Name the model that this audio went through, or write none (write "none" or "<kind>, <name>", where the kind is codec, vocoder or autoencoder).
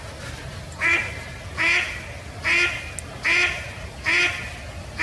none